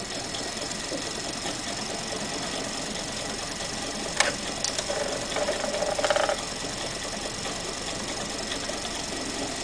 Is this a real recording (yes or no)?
yes